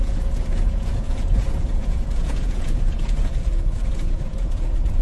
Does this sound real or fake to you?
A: fake